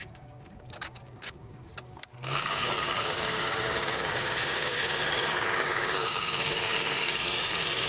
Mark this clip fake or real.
fake